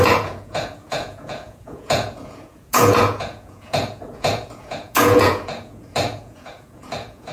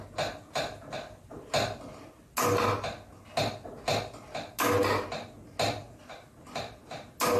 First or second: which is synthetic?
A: first